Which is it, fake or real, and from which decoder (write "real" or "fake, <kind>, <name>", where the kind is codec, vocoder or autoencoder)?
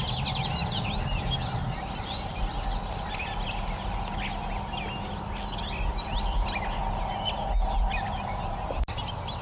real